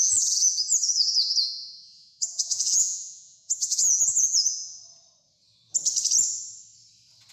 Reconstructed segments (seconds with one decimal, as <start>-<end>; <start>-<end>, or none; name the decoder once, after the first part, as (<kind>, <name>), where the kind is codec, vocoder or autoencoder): 0.0-4.8 (vocoder, Vocos)

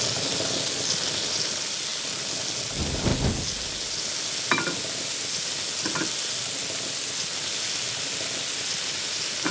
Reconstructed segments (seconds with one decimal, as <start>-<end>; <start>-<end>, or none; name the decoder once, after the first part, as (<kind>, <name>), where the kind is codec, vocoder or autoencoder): none

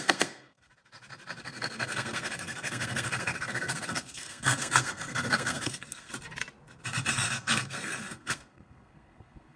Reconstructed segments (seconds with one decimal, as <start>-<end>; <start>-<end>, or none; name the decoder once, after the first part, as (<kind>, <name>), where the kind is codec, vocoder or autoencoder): 0.0-0.7 (codec, SNAC); 1.4-6.1; 7.1-9.6

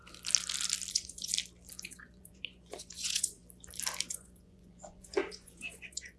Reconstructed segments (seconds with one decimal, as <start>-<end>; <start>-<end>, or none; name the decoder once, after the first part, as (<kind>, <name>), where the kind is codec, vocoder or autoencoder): 0.9-1.3 (vocoder, Vocos); 1.8-3.4; 4.1-6.2

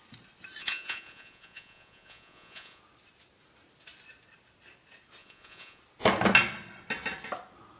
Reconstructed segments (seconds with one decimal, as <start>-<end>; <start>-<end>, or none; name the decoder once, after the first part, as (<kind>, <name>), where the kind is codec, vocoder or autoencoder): 0.6-2.8 (vocoder, Vocos); 5.2-5.8

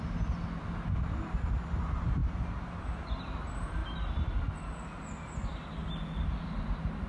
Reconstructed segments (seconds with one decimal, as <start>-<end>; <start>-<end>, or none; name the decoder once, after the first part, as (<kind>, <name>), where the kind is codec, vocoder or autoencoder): none

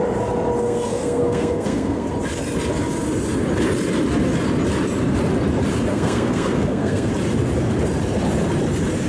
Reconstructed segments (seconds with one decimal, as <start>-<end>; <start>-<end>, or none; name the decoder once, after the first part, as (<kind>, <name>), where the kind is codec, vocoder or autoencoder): 0.6-2.1 (codec, SNAC); 5.9-7.1